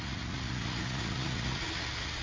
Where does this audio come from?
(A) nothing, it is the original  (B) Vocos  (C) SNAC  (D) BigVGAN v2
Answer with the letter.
B